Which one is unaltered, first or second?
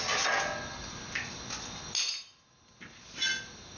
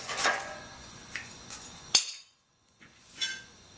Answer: first